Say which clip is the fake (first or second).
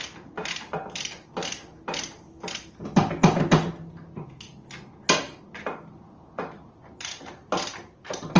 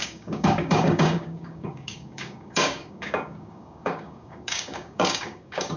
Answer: second